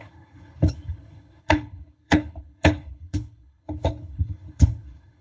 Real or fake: fake